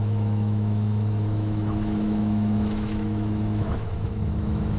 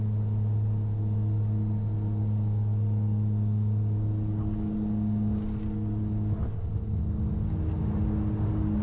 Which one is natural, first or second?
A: second